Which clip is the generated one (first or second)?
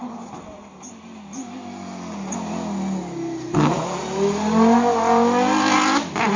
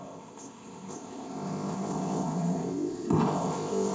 second